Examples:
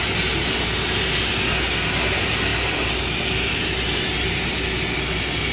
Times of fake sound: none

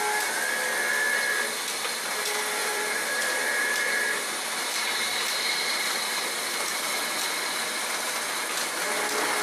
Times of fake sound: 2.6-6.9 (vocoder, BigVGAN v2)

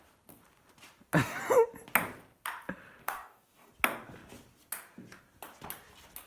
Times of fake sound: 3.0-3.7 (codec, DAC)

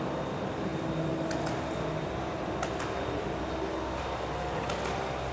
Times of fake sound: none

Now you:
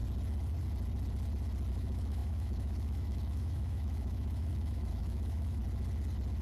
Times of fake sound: 1.7-5.6 (autoencoder, DAC-VAE)